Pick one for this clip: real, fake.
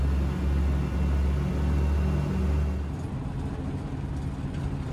real